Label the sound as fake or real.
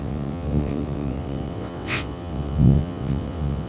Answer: fake